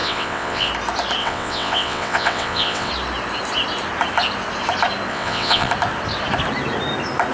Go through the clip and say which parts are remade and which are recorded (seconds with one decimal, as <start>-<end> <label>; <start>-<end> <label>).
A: 0.0-0.7 remade; 0.7-1.2 recorded; 1.2-2.9 remade; 2.9-5.1 recorded; 5.1-5.7 remade; 5.7-7.3 recorded